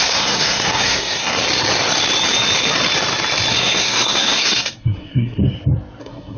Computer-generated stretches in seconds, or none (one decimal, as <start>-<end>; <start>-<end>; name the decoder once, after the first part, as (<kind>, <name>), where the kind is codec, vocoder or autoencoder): 0.0-1.4 (codec, SNAC); 3.5-5.4; 6.0-6.4